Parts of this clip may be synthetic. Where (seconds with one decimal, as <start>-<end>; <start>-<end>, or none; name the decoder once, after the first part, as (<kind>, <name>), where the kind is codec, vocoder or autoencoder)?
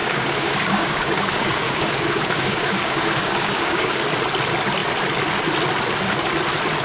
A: 0.0-4.1 (codec, DAC)